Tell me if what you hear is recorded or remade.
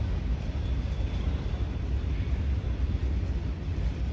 recorded